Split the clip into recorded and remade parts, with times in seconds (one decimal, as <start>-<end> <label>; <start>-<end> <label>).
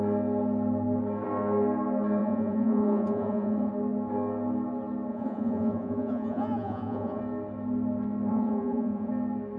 0.0-2.2 recorded; 2.2-3.7 remade; 3.7-5.1 recorded; 5.1-7.2 remade; 7.2-8.3 recorded; 8.3-9.1 remade; 9.1-9.6 recorded